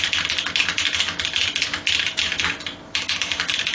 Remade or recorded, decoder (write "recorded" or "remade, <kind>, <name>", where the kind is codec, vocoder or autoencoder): recorded